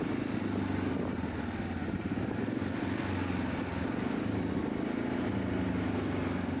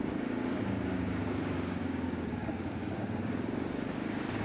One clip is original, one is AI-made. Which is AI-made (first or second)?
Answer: second